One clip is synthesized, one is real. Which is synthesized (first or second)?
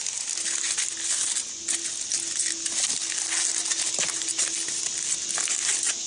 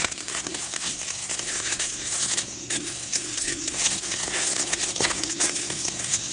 second